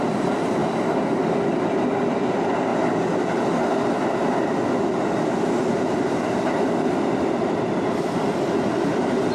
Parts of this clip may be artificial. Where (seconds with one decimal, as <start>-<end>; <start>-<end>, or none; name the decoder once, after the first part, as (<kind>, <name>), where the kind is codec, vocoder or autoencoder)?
0.0-2.7 (vocoder, BigVGAN v2); 6.8-9.3